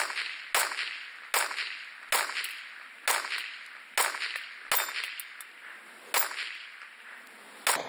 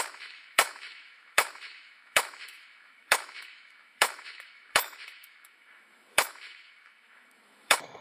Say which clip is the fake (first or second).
second